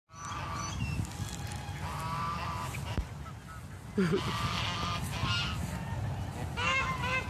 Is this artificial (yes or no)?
no